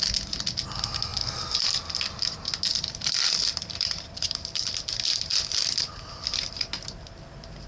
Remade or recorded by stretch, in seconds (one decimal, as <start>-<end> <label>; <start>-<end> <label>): 0.0-1.1 recorded; 1.1-1.9 remade; 1.9-2.7 recorded; 2.7-6.7 remade; 6.7-7.7 recorded